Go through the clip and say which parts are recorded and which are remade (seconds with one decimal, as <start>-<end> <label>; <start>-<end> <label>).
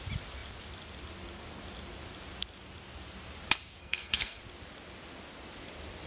0.0-3.8 recorded; 3.8-4.4 remade; 4.4-6.1 recorded